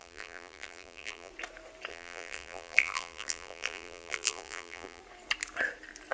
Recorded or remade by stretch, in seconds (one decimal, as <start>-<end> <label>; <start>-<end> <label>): 0.0-1.3 remade; 1.3-1.9 recorded; 1.9-5.0 remade; 5.0-6.1 recorded